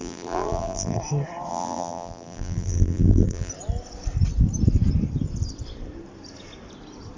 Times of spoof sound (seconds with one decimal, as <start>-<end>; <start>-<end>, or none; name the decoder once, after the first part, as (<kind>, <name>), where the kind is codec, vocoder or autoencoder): 0.0-1.0 (vocoder, BigVGAN v2); 1.5-3.5